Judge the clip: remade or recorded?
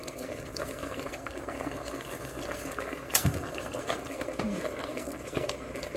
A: remade